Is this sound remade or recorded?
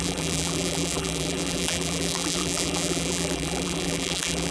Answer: remade